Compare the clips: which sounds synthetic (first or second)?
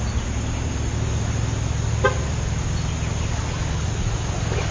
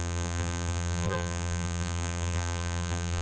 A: second